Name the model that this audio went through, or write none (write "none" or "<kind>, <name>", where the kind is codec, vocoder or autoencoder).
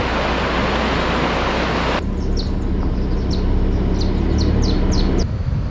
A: none